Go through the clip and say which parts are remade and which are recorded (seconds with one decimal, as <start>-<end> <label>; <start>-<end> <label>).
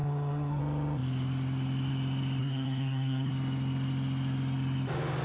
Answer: 0.0-0.6 remade; 0.6-2.4 recorded; 2.4-3.3 remade; 3.3-5.2 recorded